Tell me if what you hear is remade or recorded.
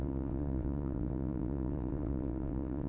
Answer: remade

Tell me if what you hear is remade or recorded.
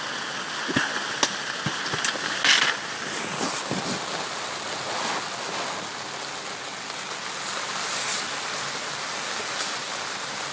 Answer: recorded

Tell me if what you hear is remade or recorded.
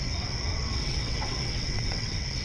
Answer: remade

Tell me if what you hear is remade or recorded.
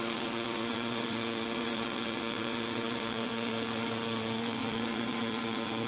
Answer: remade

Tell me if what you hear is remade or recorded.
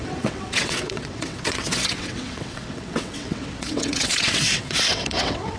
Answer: remade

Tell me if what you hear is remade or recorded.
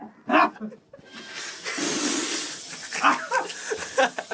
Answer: recorded